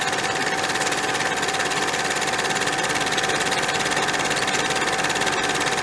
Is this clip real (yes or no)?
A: yes